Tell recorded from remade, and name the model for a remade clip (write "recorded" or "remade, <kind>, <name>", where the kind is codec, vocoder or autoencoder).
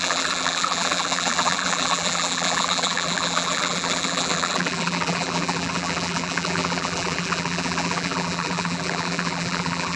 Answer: remade, vocoder, BigVGAN v2